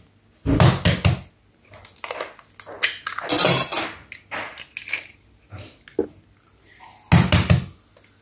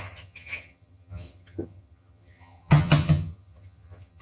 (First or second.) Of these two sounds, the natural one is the first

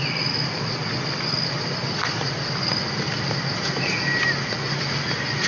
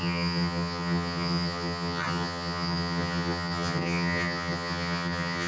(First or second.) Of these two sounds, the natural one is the first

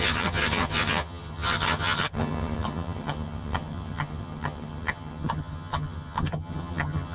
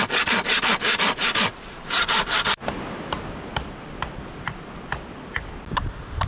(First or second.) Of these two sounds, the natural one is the second